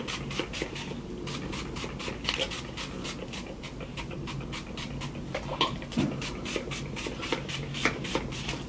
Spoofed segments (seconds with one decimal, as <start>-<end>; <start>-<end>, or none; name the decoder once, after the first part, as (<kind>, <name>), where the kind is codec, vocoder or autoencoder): none